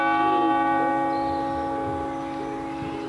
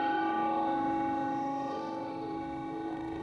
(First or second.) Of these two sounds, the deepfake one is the second